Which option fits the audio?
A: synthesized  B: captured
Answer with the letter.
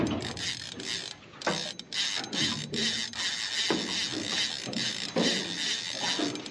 B